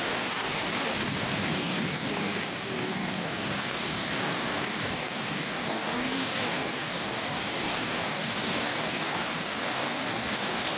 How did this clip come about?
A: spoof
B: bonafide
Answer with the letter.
A